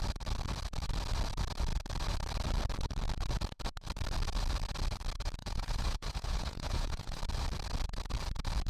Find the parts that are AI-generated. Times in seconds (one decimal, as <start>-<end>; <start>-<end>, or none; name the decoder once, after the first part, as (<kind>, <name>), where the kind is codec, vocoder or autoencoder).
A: 5.4-7.2 (vocoder, Vocos)